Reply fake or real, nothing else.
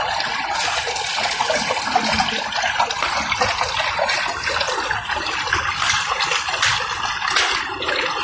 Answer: real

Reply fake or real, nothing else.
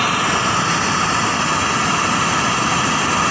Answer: real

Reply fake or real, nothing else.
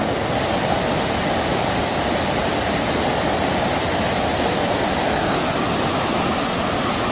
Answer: real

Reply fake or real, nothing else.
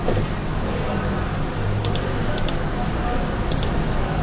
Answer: real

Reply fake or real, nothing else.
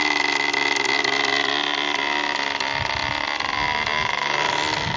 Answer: real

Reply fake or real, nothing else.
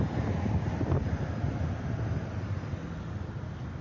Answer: real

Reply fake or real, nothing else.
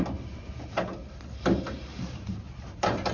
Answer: real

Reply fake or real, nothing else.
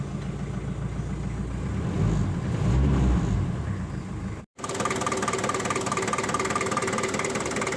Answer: real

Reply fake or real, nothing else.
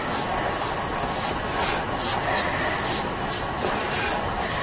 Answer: real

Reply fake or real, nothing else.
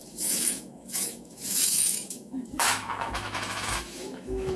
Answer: fake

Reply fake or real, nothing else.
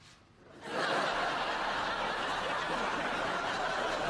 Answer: real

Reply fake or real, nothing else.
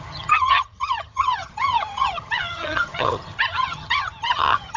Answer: fake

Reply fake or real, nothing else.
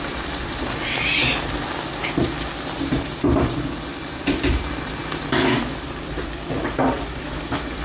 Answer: fake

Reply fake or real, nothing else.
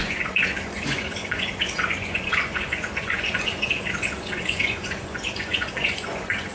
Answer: fake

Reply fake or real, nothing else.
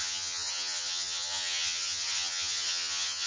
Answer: fake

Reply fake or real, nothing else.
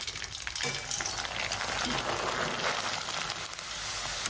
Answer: real